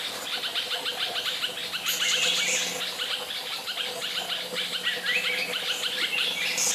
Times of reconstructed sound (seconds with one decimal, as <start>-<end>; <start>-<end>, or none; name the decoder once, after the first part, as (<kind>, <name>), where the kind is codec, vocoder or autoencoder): none